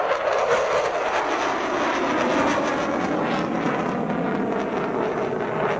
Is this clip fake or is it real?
real